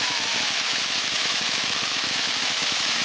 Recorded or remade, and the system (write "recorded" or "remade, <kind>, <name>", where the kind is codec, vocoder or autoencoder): remade, autoencoder, DAC-VAE